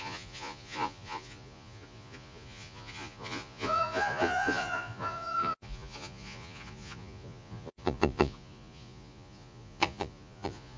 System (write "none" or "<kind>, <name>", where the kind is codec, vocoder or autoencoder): vocoder, Vocos